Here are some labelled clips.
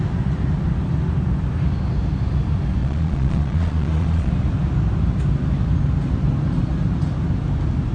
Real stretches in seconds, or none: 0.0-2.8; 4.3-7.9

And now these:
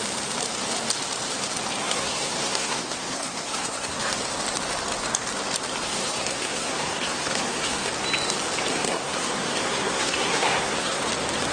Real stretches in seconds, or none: 0.0-1.8; 4.0-5.8; 7.9-8.7; 11.0-11.5

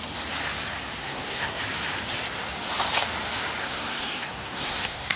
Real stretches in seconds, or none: 0.0-1.0; 1.6-3.6